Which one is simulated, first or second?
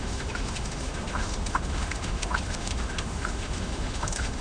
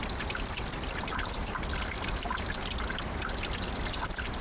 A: first